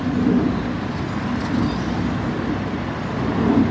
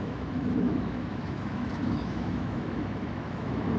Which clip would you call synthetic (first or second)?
second